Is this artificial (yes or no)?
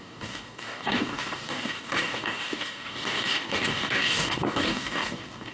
yes